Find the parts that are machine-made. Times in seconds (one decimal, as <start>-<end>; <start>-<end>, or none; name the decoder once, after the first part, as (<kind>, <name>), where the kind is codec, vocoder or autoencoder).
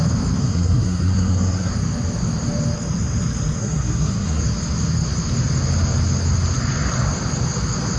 0.4-1.7 (codec, SNAC); 3.6-4.4